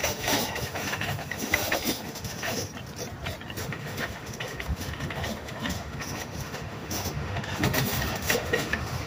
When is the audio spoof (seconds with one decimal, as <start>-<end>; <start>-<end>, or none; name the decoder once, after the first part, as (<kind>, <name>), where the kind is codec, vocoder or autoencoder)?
0.0-2.7 (autoencoder, DAC-VAE); 3.6-9.1